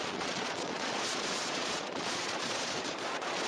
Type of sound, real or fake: fake